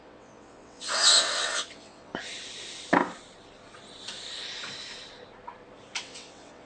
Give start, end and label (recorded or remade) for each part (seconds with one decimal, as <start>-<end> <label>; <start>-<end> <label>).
0.0-2.1 remade; 2.1-6.0 recorded; 6.0-6.7 remade